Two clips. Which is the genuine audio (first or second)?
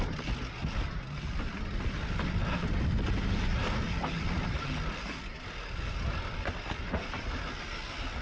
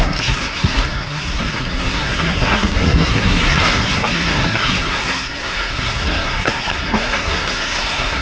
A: first